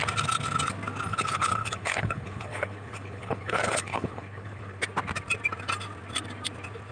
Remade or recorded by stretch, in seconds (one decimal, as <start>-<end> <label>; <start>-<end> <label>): 0.0-1.1 recorded; 1.1-4.8 remade; 4.8-6.9 recorded